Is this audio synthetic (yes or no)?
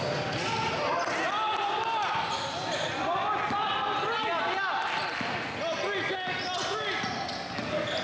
no